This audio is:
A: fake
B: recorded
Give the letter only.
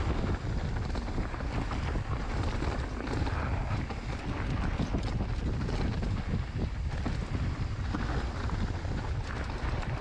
B